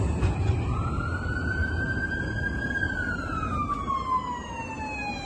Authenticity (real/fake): real